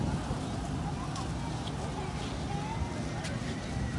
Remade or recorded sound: recorded